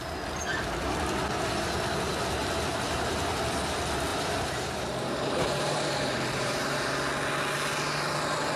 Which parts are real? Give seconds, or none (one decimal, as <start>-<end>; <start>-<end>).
0.0-2.7; 3.3-4.1; 6.9-8.6